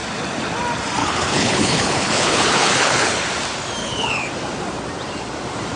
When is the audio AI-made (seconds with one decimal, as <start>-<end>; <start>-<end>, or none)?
1.0-3.3; 3.8-4.3

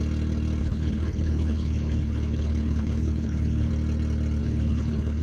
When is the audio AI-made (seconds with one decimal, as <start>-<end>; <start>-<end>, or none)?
0.6-3.7; 4.4-5.2

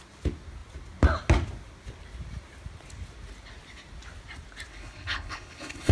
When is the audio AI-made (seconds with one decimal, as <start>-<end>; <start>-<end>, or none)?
4.7-5.9

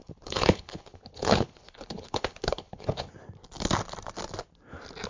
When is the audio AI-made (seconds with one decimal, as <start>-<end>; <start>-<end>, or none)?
0.0-3.1

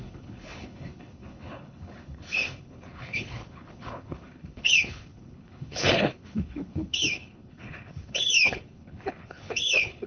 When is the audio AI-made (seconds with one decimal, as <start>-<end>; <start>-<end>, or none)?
0.0-10.1